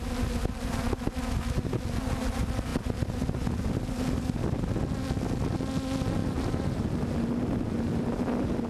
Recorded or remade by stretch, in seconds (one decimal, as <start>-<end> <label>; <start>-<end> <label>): 0.0-8.7 recorded